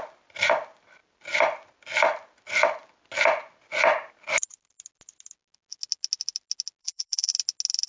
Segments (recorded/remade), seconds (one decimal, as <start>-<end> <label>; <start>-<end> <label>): 0.0-6.8 recorded; 6.8-7.3 remade; 7.3-7.9 recorded